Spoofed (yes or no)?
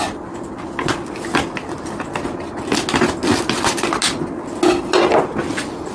no